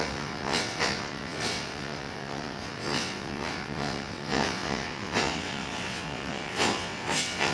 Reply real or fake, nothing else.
fake